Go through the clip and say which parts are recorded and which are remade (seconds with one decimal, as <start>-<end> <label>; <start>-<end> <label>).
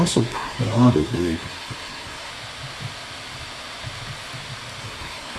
0.0-2.3 remade; 2.3-4.8 recorded; 4.8-5.4 remade